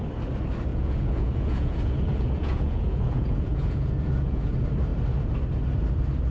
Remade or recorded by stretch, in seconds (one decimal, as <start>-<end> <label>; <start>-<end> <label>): 0.0-0.7 recorded; 0.7-4.5 remade; 4.5-6.3 recorded